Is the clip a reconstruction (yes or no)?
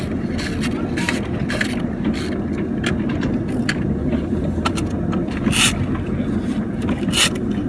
no